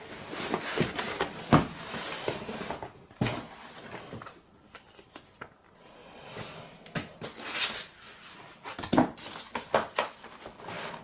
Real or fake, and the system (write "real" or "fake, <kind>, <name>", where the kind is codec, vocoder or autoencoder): real